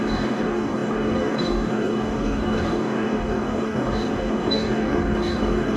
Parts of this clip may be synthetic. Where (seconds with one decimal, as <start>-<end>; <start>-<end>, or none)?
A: 0.0-5.8